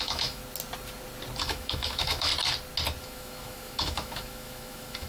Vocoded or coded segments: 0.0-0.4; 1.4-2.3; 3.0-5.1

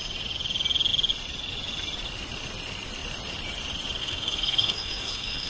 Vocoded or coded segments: 4.0-5.5